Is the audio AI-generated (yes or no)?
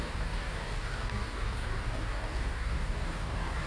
yes